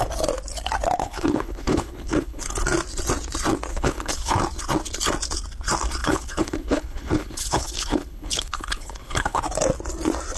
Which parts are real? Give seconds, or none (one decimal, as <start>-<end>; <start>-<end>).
0.0-1.0; 2.5-3.7; 4.4-6.0; 9.4-10.4